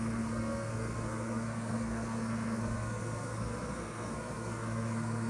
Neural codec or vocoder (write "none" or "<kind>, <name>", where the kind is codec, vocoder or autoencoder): codec, SNAC